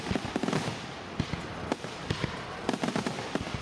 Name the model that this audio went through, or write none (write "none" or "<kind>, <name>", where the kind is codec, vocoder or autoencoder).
none